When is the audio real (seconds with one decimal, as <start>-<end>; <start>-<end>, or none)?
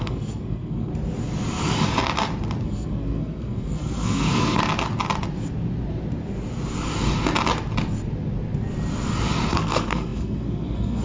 0.9-2.6; 4.6-9.5